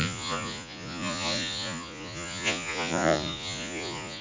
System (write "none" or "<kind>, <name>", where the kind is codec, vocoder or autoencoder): vocoder, Vocos